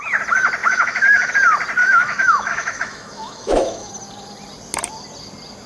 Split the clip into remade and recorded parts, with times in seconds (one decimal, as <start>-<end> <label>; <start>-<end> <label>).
0.0-0.6 recorded; 0.6-1.3 remade; 1.3-1.8 recorded; 1.8-3.9 remade; 3.9-5.7 recorded

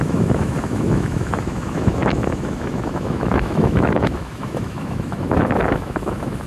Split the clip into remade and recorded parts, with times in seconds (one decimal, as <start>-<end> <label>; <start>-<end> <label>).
0.0-6.5 remade

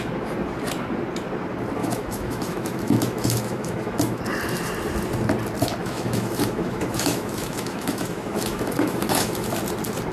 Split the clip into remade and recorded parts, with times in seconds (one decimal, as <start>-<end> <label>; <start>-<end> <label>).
0.0-1.8 recorded; 1.8-4.2 remade; 4.2-5.8 recorded; 5.8-9.5 remade; 9.5-10.1 recorded